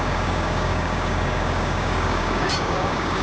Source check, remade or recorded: remade